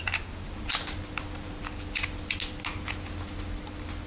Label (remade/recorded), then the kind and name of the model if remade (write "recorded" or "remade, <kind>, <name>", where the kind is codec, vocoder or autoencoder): recorded